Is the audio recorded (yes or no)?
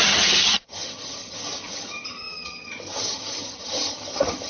no